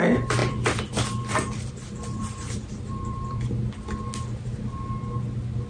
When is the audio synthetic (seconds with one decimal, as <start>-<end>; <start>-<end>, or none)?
0.4-3.8